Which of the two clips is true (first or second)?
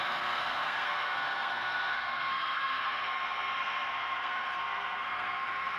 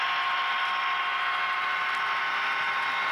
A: second